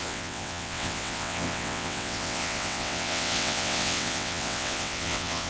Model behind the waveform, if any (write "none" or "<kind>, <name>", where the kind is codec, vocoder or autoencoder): vocoder, WaveNeXt